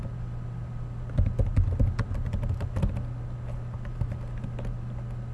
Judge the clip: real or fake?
real